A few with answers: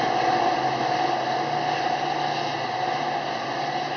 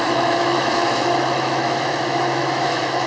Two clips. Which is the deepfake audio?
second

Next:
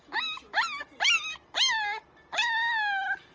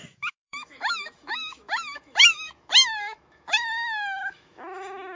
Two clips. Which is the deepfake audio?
second